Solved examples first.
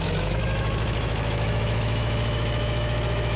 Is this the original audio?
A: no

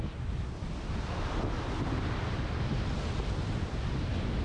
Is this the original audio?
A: yes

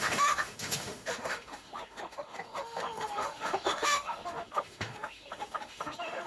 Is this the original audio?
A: no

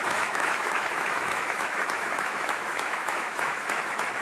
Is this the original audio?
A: no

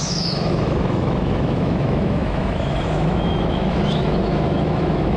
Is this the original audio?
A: no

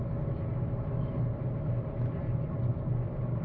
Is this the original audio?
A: yes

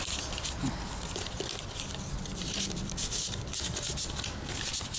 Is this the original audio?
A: yes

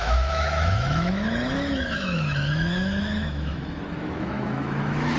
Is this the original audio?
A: no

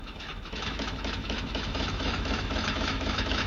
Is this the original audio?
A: no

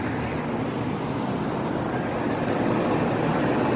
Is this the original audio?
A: yes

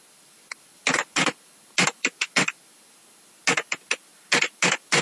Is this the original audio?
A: yes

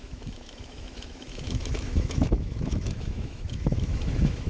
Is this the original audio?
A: no